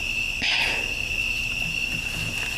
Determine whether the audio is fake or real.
real